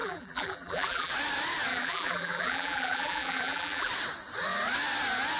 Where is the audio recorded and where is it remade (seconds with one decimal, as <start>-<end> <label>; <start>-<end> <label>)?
0.0-1.1 remade; 1.1-1.7 recorded; 1.7-3.9 remade; 3.9-5.4 recorded